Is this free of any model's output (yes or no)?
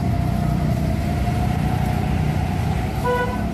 yes